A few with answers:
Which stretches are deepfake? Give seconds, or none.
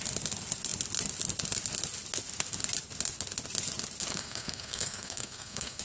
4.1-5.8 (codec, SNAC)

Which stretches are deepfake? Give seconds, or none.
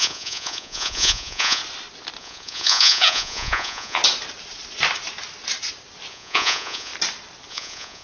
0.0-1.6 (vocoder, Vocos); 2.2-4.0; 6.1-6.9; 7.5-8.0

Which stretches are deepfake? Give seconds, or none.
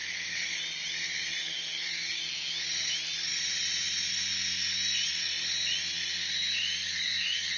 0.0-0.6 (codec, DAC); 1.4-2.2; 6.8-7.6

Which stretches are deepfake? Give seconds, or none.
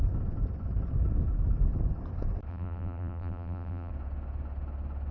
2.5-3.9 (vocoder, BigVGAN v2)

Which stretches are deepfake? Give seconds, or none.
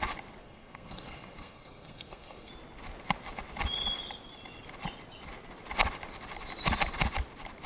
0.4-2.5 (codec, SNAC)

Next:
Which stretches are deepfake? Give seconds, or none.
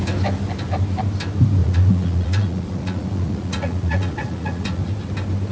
1.6-4.9 (vocoder, Vocos)